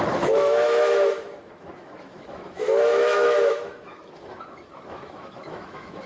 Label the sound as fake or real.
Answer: fake